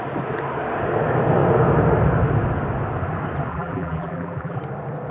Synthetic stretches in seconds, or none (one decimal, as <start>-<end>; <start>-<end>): 3.5-4.6